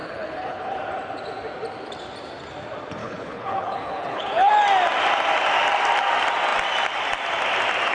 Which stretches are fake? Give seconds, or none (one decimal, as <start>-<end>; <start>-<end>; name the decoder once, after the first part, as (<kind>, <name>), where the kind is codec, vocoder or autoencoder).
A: 0.0-0.8 (codec, HILCodec); 3.0-4.5